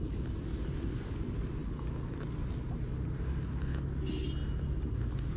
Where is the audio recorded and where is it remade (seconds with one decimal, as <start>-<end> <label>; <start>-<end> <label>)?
0.0-5.4 recorded